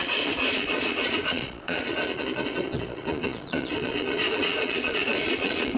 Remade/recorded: remade